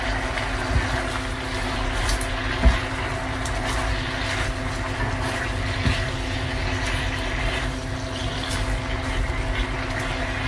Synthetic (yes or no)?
no